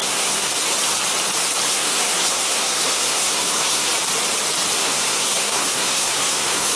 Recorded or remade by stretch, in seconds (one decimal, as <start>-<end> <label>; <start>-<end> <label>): 0.0-0.5 remade; 0.5-1.7 recorded; 1.7-3.9 remade; 3.9-4.8 recorded; 4.8-6.8 remade